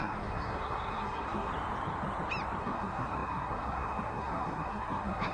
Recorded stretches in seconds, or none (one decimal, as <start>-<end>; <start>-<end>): 1.5-2.6